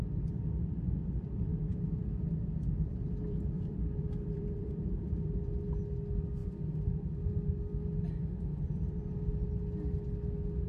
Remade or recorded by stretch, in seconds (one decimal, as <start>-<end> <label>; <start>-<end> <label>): 0.0-1.5 recorded; 1.5-5.5 remade; 5.5-8.5 recorded; 8.5-9.3 remade; 9.3-10.7 recorded